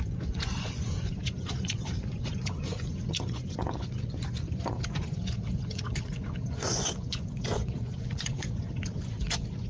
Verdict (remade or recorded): remade